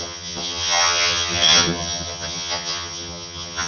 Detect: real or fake fake